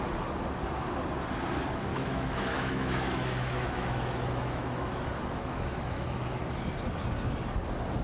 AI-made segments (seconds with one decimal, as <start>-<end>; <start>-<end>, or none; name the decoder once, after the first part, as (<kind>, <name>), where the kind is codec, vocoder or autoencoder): 1.9-6.7 (autoencoder, DAC-VAE)